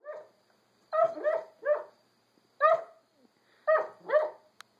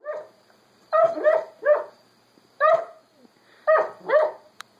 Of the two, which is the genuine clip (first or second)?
first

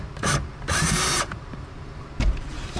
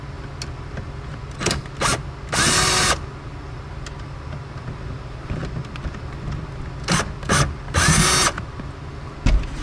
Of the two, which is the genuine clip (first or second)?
second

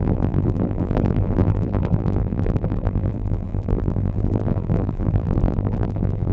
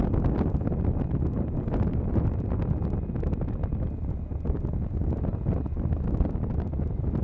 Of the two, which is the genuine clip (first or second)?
second